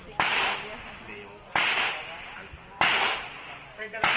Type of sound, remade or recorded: recorded